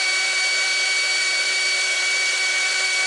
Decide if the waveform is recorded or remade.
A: remade